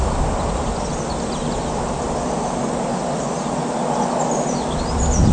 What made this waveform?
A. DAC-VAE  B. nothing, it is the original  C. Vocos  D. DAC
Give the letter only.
B